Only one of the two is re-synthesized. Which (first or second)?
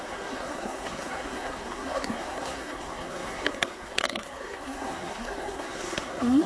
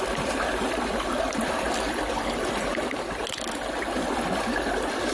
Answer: first